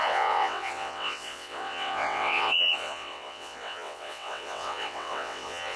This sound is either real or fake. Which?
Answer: fake